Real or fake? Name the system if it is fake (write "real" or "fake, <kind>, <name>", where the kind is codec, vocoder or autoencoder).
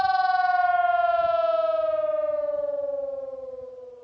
real